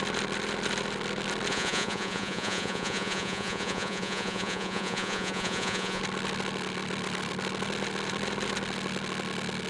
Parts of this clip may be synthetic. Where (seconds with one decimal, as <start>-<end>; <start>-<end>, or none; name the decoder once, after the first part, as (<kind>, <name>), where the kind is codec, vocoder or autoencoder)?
1.5-6.0 (vocoder, Vocos)

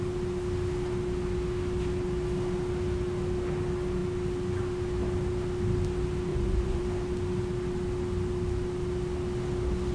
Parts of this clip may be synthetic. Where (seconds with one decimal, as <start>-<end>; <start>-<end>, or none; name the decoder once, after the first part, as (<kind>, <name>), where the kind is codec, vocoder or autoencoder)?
6.3-6.8 (vocoder, Vocos)

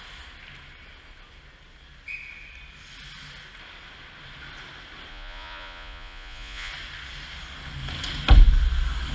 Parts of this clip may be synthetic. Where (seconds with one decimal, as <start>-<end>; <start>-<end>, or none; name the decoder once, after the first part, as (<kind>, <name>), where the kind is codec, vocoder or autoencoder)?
5.1-6.7 (vocoder, Vocos)

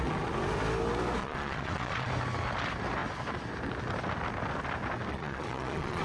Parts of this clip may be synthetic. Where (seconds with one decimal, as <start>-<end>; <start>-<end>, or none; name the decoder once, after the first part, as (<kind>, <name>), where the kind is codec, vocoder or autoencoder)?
1.2-2.1 (vocoder, Vocos); 5.1-6.0

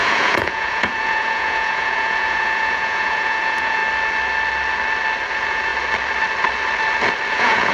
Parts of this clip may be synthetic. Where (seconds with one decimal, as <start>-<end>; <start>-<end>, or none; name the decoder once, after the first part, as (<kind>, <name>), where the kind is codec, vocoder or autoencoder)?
0.0-3.8 (vocoder, Vocos); 5.3-5.7; 7.3-7.7

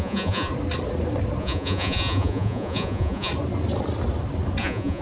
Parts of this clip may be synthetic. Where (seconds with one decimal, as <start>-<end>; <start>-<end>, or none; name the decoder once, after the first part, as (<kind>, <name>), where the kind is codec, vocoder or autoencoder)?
0.0-0.5 (vocoder, Vocos); 1.4-3.3; 4.6-5.0

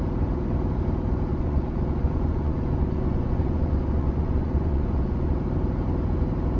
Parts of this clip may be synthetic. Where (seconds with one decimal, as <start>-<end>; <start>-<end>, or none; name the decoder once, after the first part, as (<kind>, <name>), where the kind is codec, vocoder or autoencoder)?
1.3-5.3 (vocoder, Vocos)